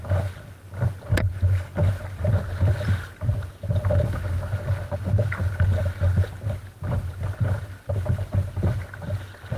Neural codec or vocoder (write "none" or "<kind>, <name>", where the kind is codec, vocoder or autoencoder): none